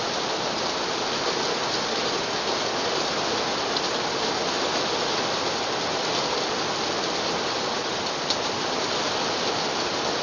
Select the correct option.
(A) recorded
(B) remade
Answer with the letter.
A